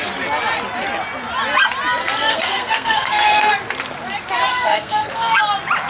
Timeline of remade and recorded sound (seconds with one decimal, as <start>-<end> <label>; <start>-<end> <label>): 0.0-2.0 recorded; 2.0-3.5 remade; 3.5-4.5 recorded; 4.5-5.4 remade; 5.4-5.9 recorded